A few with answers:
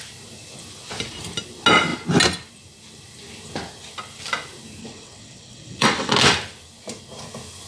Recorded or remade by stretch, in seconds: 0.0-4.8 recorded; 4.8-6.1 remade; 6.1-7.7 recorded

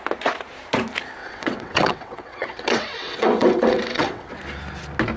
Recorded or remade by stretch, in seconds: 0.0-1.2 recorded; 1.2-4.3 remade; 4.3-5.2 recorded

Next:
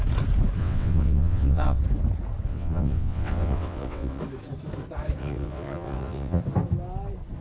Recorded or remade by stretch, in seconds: 0.0-0.6 recorded; 0.6-1.8 remade; 1.8-2.5 recorded; 2.5-4.2 remade; 4.2-5.2 recorded; 5.2-6.4 remade; 6.4-7.4 recorded

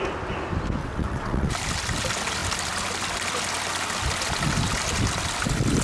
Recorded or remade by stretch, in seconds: 0.0-0.8 recorded; 0.8-1.5 remade; 1.5-5.8 recorded